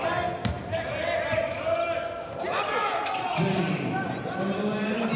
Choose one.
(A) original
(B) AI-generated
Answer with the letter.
A